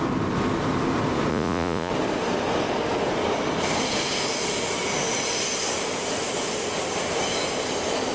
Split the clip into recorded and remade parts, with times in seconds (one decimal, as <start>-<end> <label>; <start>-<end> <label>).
0.0-1.3 recorded; 1.3-1.9 remade; 1.9-8.1 recorded